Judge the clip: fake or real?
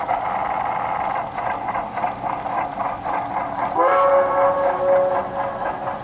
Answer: real